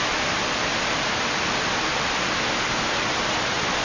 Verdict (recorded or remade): recorded